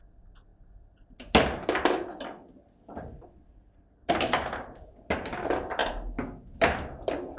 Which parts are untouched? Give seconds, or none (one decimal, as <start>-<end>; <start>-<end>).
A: 0.0-7.4